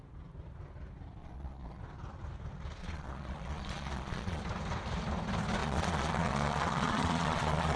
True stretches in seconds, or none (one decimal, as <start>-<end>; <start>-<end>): 0.0-1.2; 1.8-2.8; 4.4-5.6

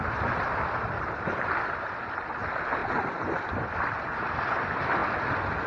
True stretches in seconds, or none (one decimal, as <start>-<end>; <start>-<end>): 0.0-5.7

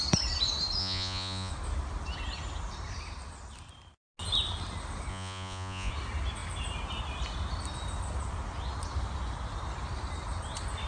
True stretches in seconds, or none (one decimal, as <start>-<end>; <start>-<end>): 0.0-0.8; 1.5-5.1; 5.9-10.9

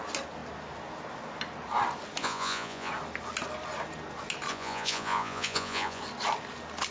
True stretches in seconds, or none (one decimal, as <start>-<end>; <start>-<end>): 0.0-2.2; 2.9-4.5; 6.0-6.9

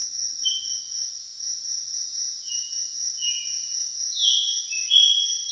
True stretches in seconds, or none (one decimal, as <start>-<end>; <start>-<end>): 0.0-1.3; 4.6-5.5

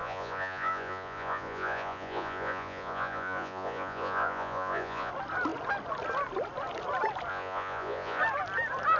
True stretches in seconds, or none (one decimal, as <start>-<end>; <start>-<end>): 5.1-7.3; 8.2-9.0

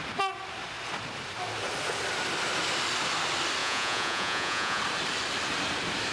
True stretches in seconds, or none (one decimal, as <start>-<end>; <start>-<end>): 0.0-3.6; 4.8-6.1

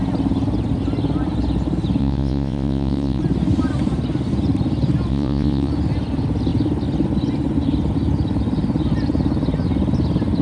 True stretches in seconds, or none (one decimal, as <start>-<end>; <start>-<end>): 0.0-2.0; 3.2-5.1; 5.7-10.4